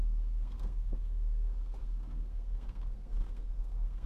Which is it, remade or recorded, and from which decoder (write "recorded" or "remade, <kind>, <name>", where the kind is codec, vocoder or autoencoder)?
remade, codec, SNAC